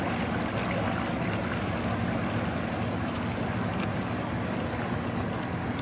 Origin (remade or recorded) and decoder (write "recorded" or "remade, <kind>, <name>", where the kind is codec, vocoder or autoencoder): recorded